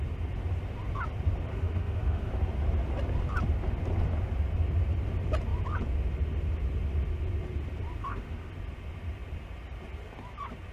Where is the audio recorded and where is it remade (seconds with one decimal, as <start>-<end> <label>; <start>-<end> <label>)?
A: 0.0-1.5 recorded; 1.5-2.3 remade; 2.3-8.0 recorded; 8.0-8.5 remade; 8.5-10.7 recorded